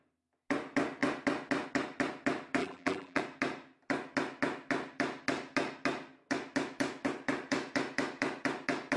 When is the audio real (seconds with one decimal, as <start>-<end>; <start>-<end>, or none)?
0.0-2.6; 3.2-9.0